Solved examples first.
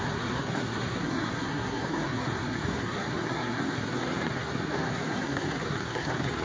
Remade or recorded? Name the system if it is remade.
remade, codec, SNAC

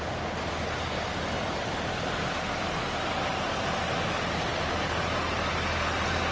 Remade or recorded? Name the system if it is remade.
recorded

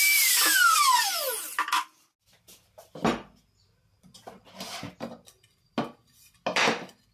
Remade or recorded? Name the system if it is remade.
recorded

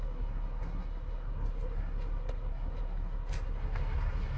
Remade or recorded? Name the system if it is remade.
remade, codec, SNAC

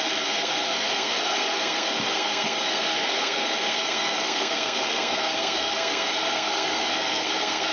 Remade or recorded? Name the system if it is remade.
remade, codec, SNAC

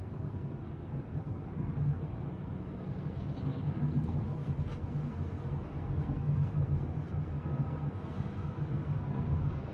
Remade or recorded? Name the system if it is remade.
remade, codec, SNAC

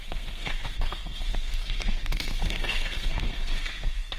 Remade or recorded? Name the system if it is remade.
remade, codec, SNAC